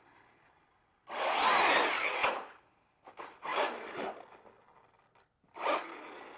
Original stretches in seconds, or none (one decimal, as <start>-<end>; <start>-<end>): 0.0-2.2; 3.1-3.5; 4.1-6.4